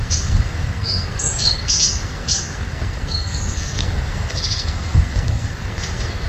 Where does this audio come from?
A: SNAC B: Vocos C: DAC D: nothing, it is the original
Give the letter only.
A